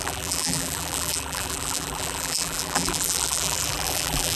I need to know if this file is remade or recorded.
remade